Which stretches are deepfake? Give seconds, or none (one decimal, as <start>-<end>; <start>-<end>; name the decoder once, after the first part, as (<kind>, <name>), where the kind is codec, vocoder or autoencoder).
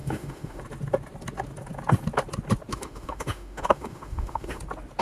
0.0-0.6 (autoencoder, DAC-VAE); 2.7-4.6